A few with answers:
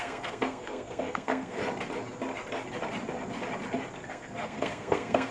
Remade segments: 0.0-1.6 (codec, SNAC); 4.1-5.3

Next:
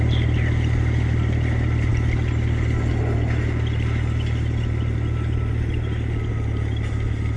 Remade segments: none

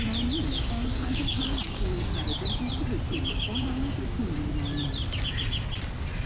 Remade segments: 0.5-2.0 (codec, DAC); 3.3-4.2

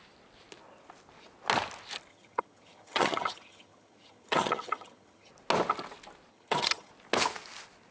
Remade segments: 2.1-5.3 (vocoder, HiFi-GAN); 6.3-6.9

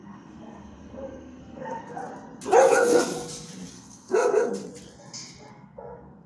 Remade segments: 0.0-2.0 (codec, SNAC); 2.7-3.1; 3.7-4.6; 5.5-6.3

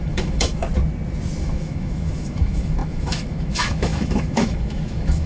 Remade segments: 0.0-0.6 (autoencoder, DAC-VAE); 1.4-5.3

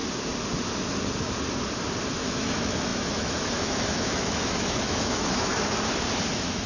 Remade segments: 2.1-5.5 (autoencoder, DAC-VAE); 6.3-6.7